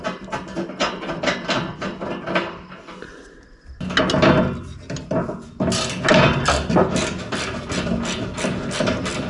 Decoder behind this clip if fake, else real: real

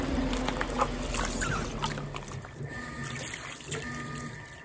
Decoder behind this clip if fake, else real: real